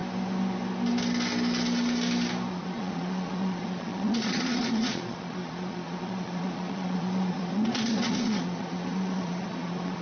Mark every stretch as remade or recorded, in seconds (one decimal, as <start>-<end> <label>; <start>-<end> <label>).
0.0-2.5 recorded; 2.5-10.0 remade